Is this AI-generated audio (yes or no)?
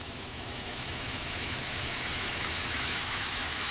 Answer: yes